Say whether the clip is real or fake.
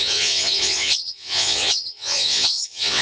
fake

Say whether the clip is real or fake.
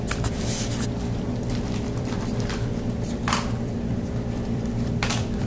fake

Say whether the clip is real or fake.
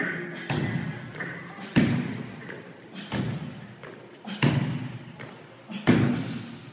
real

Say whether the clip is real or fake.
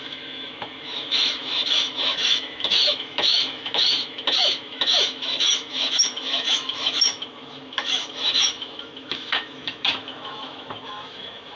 fake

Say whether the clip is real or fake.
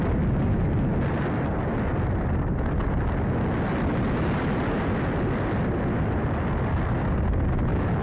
real